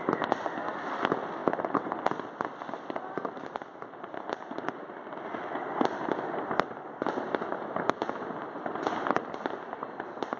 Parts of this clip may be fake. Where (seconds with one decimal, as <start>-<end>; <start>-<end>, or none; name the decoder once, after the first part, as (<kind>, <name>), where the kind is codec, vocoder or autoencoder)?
1.4-2.0 (vocoder, BigVGAN v2)